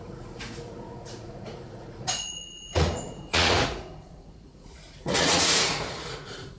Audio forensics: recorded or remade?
remade